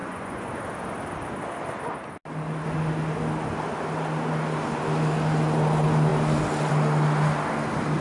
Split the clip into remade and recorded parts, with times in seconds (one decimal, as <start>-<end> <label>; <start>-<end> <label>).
0.0-0.5 remade; 0.5-8.0 recorded